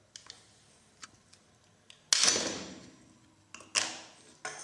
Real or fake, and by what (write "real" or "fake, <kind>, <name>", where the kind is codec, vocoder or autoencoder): real